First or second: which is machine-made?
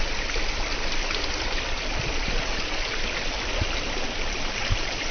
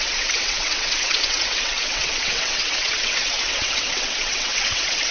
second